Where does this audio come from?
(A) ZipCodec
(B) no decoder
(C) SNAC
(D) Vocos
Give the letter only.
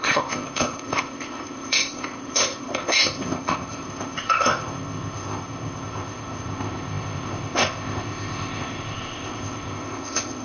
A